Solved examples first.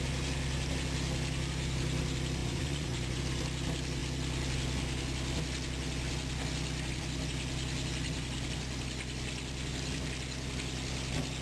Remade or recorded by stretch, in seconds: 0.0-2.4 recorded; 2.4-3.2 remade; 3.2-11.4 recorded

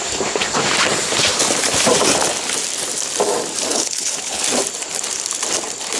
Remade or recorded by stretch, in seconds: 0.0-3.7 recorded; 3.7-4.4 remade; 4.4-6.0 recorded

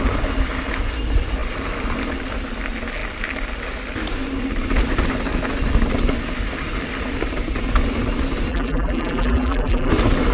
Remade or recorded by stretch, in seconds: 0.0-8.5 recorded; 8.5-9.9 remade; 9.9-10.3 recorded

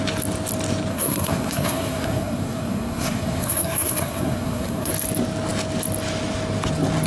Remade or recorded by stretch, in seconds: 0.0-0.9 recorded; 0.9-4.9 remade; 4.9-7.1 recorded